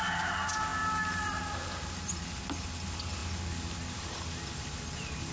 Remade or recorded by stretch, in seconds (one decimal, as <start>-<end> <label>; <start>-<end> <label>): 0.0-5.3 recorded